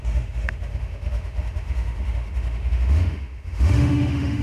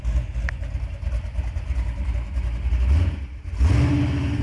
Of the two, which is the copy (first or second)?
first